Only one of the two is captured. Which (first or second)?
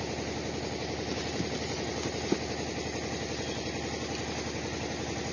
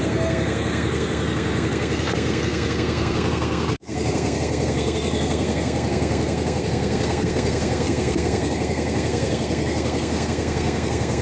first